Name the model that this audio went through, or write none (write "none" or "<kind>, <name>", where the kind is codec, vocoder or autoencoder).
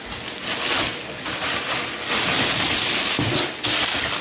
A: none